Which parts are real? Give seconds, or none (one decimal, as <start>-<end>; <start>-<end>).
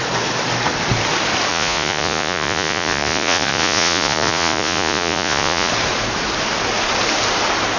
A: 0.0-1.5; 5.7-7.8